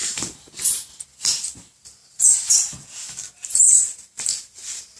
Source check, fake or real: fake